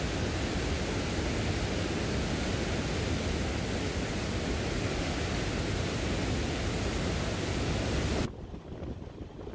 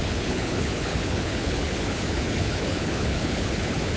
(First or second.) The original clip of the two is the first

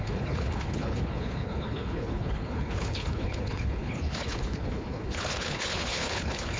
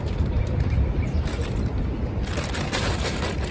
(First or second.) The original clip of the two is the second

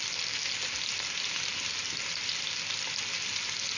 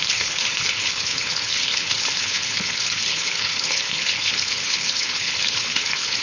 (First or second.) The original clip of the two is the first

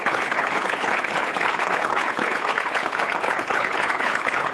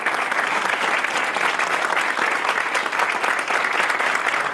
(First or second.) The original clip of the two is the second